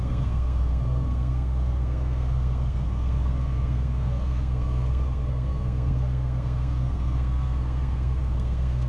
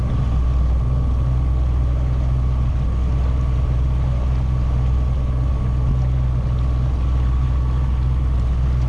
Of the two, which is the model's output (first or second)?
first